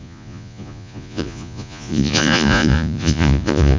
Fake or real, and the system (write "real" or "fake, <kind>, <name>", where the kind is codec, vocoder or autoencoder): fake, vocoder, Vocos